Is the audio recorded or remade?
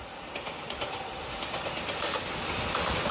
recorded